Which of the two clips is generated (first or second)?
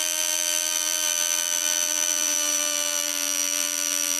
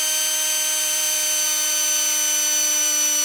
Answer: first